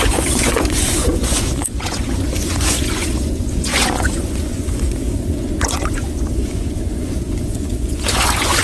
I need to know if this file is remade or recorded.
remade